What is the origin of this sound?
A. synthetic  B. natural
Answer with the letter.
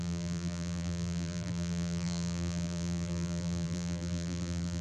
A